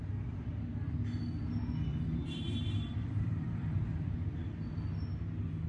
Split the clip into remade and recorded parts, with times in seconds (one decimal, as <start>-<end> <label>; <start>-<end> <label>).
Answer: 0.0-1.9 recorded; 1.9-4.1 remade; 4.1-5.7 recorded